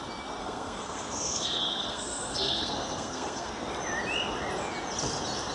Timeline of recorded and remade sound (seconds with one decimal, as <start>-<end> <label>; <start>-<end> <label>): 0.0-0.4 recorded; 0.4-3.7 remade; 3.7-5.5 recorded